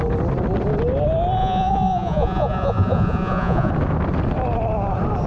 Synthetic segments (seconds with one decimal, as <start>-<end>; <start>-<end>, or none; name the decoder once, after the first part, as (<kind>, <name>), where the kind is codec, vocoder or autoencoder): 1.4-3.7 (vocoder, Vocos)